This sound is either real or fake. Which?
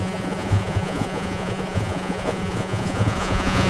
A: fake